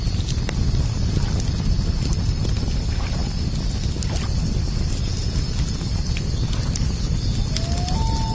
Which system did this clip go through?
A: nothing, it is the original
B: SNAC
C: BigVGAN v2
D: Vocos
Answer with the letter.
A